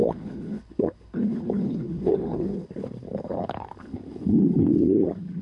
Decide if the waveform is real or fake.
fake